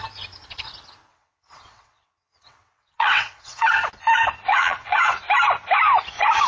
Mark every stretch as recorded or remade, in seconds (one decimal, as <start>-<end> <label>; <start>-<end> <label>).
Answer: 0.0-1.1 recorded; 1.1-3.7 remade; 3.7-4.5 recorded; 4.5-5.1 remade; 5.1-6.5 recorded